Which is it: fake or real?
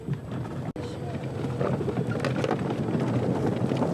real